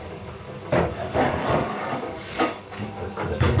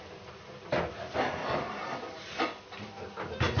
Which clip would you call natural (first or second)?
second